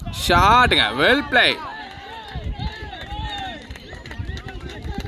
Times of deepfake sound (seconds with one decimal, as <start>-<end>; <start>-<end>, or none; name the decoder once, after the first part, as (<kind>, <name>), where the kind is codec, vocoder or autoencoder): 1.7-5.1 (vocoder, BigVGAN v2)